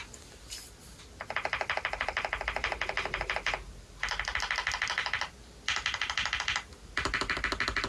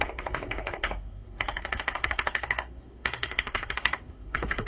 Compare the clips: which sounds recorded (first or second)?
first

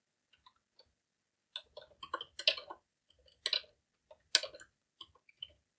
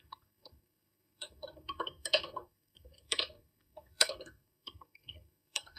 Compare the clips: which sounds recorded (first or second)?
first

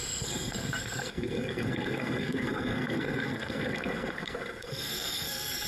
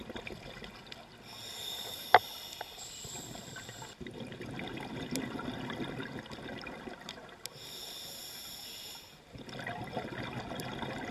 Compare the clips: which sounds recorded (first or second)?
second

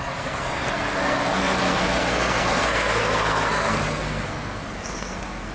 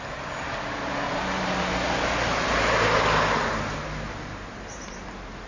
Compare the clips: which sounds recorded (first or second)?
second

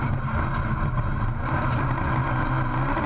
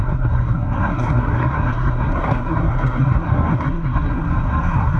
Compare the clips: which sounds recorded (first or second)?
first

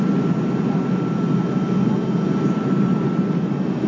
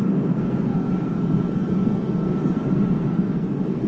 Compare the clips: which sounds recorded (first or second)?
first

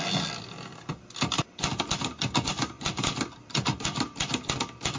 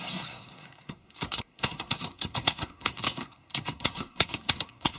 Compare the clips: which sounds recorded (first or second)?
first